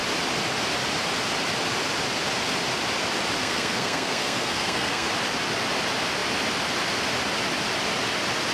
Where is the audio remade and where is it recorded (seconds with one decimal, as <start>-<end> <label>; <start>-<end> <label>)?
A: 0.0-3.4 recorded; 3.4-5.1 remade; 5.1-8.5 recorded

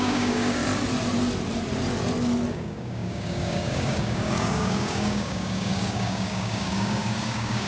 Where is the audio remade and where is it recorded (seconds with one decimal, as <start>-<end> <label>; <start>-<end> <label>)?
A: 0.0-0.6 remade; 0.6-2.5 recorded; 2.5-7.7 remade